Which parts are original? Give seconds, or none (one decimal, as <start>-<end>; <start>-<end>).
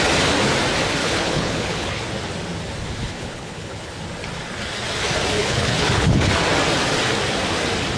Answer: 0.0-1.0; 2.0-3.0; 3.9-5.4; 6.3-8.0